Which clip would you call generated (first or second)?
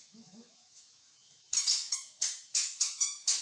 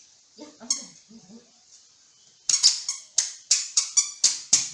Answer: first